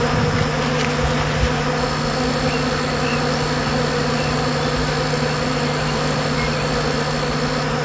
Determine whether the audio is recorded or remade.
recorded